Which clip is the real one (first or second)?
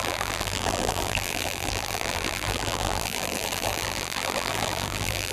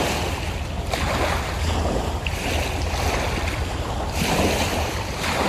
second